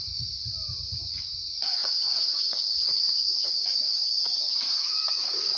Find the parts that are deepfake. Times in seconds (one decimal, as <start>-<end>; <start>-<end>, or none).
0.0-0.4; 1.0-5.6